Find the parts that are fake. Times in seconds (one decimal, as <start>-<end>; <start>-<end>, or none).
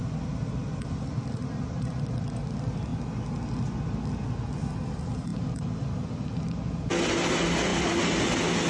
none